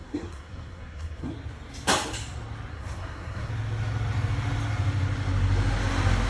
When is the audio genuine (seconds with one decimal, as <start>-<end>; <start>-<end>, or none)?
1.3-2.7; 3.5-6.3

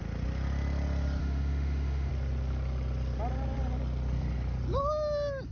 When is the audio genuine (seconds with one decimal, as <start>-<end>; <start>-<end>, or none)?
0.0-1.2; 2.1-5.5

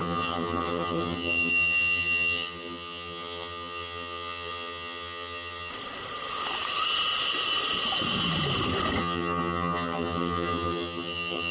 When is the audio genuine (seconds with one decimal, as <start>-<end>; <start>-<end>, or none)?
5.7-9.0

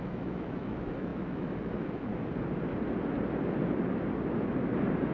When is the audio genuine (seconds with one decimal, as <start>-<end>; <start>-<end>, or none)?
2.1-5.1

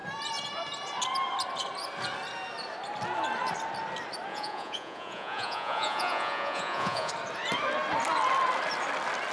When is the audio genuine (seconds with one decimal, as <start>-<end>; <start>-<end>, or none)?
0.0-4.3; 7.1-9.3